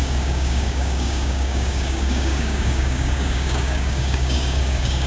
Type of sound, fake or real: fake